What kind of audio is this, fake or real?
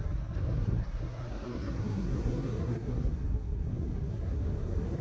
fake